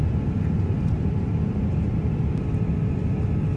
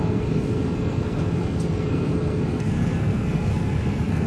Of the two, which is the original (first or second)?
first